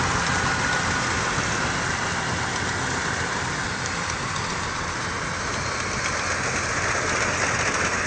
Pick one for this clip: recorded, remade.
recorded